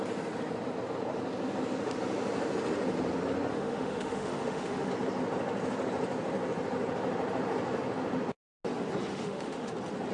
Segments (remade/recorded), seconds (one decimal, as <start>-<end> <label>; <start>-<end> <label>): 0.0-3.5 recorded; 3.5-4.9 remade; 4.9-9.1 recorded; 9.1-9.7 remade; 9.7-10.1 recorded